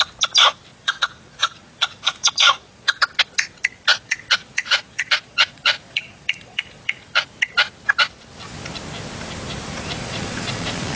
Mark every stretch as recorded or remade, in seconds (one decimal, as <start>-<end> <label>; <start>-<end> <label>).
0.0-0.7 recorded; 0.7-3.0 remade; 3.0-3.9 recorded; 3.9-7.2 remade; 7.2-10.0 recorded; 10.0-11.0 remade